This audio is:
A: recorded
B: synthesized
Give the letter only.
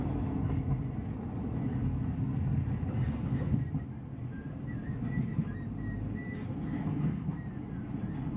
A